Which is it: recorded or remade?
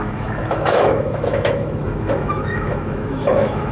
remade